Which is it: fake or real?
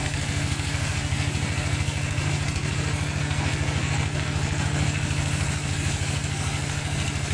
fake